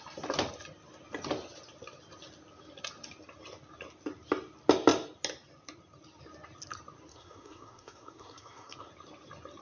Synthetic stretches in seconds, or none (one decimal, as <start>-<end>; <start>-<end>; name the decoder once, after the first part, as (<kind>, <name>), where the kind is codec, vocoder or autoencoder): 7.1-8.9 (codec, SNAC)

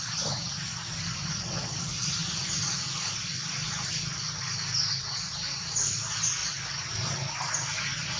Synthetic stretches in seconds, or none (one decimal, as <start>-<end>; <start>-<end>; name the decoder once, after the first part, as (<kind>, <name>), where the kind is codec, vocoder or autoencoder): none

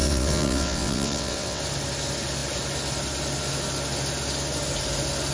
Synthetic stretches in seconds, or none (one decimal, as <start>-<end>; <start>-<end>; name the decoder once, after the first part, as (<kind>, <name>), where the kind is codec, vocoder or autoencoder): 0.0-1.6 (vocoder, WaveNeXt)

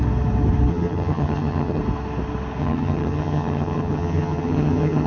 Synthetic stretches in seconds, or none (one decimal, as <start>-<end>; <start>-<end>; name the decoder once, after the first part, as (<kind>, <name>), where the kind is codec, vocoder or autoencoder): 0.7-1.8 (vocoder, HiFi-GAN); 2.6-5.1

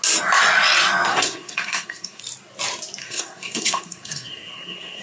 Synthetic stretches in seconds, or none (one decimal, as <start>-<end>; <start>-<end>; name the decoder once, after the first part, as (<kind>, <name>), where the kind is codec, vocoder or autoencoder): 1.1-2.2 (codec, SNAC); 3.0-5.0